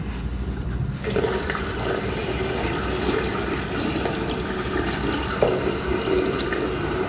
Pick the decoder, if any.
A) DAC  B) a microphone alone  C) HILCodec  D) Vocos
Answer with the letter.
B